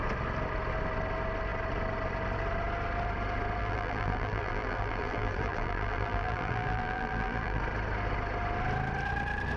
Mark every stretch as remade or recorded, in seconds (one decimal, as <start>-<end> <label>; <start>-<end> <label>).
0.0-3.6 recorded; 3.6-7.6 remade; 7.6-9.6 recorded